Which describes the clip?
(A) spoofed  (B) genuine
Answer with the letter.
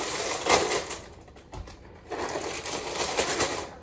B